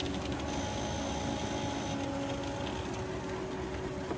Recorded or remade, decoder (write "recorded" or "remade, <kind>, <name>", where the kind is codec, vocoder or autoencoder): recorded